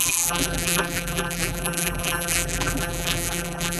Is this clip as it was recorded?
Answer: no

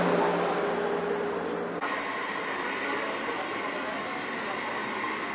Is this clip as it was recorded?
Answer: yes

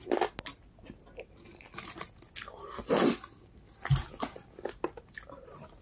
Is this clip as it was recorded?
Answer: yes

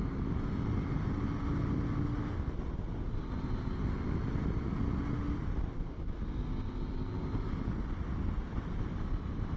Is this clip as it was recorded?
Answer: yes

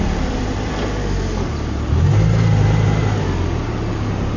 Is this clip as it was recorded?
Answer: yes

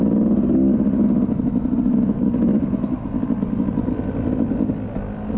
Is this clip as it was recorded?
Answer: yes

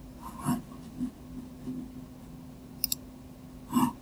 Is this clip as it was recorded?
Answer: yes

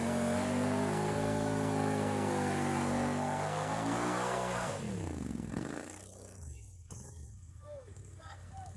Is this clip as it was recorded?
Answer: no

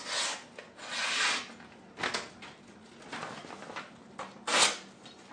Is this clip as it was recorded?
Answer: yes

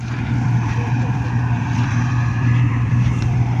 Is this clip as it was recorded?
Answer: no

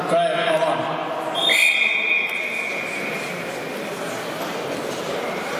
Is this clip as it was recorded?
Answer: yes